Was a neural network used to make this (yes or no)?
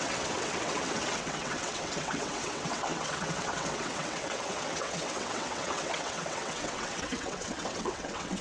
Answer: yes